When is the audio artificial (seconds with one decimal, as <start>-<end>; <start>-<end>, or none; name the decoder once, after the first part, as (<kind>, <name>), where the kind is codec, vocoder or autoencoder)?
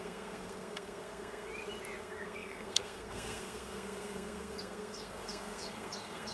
0.0-1.5 (codec, SNAC); 2.0-6.3